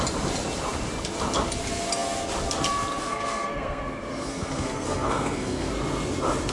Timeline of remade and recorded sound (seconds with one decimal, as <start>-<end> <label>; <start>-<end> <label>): 0.0-3.0 recorded; 3.0-5.7 remade; 5.7-6.5 recorded